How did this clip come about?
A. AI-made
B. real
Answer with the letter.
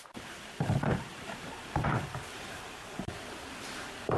A